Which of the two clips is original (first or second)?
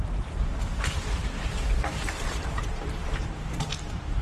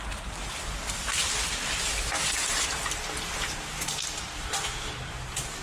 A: second